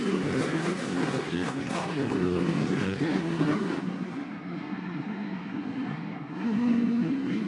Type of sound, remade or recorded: remade